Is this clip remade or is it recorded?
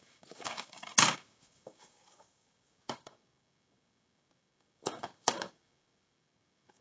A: remade